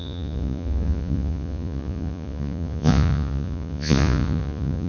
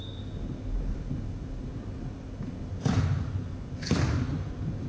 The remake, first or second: first